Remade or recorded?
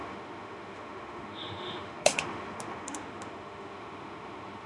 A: remade